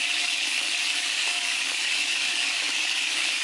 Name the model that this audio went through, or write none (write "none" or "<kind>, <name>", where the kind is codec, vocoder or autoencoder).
codec, DAC